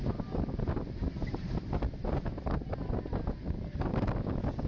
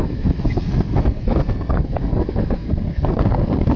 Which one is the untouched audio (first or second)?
first